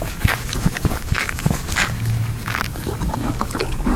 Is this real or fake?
fake